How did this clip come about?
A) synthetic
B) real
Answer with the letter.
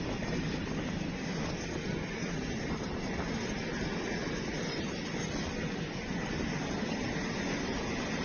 B